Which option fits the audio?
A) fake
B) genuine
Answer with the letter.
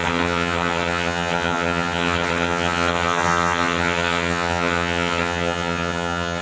A